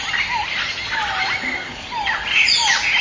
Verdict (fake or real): real